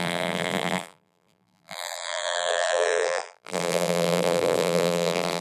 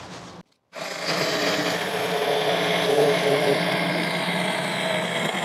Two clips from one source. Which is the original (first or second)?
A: second